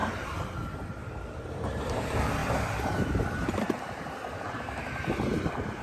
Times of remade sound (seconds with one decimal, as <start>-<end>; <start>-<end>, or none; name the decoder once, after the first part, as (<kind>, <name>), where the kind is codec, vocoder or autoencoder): 0.0-2.4 (vocoder, BigVGAN v2)